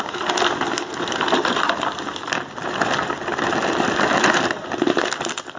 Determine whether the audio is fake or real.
real